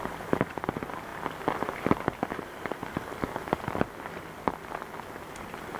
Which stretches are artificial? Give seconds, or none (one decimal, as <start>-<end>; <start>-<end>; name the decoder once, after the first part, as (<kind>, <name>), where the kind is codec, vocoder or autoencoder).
none